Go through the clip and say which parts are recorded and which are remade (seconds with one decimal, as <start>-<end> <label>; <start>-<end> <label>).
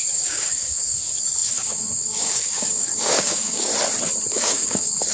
0.0-3.7 remade; 3.7-4.3 recorded; 4.3-5.1 remade